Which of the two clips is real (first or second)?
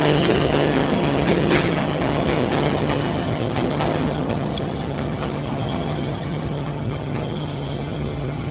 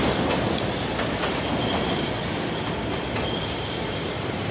second